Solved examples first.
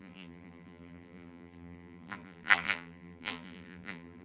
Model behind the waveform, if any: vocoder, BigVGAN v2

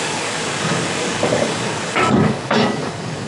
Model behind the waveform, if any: codec, DAC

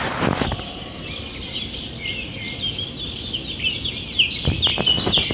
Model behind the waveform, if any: none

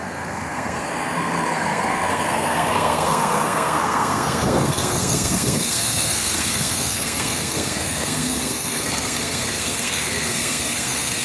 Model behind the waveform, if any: codec, SNAC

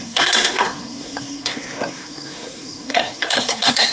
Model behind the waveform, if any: codec, SNAC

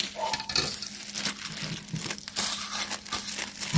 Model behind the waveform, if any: none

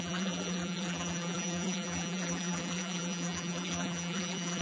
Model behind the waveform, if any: vocoder, BigVGAN v2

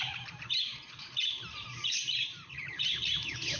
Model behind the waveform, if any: vocoder, BigVGAN v2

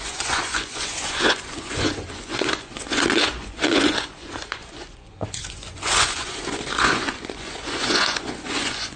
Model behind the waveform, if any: vocoder, Vocos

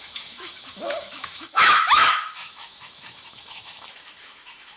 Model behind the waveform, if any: autoencoder, DAC-VAE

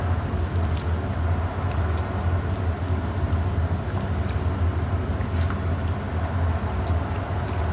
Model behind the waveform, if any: none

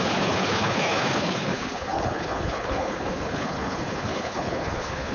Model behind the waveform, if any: codec, HILCodec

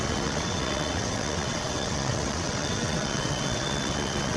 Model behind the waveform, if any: vocoder, WaveNeXt